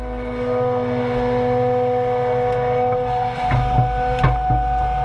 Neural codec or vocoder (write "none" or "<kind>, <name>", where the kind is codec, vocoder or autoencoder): none